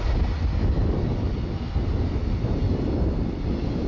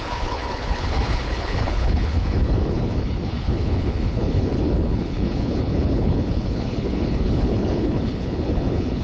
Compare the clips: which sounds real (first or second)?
first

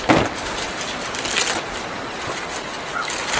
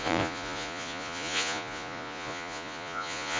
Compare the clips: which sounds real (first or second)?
first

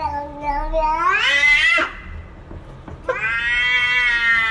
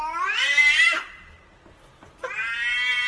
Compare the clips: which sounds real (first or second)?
first